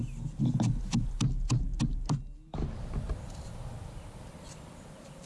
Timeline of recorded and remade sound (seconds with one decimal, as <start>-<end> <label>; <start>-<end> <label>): 0.0-5.3 recorded